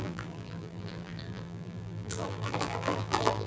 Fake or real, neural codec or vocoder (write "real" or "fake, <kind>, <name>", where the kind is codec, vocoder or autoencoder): fake, vocoder, BigVGAN v2